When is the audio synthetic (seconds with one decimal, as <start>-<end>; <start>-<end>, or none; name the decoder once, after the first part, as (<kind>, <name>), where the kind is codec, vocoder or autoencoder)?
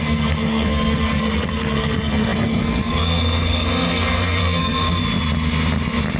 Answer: 0.0-5.0 (codec, SNAC)